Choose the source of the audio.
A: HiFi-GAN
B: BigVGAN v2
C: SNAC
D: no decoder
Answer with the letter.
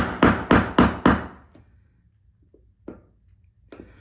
D